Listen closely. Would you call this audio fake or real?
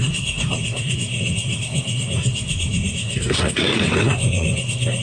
fake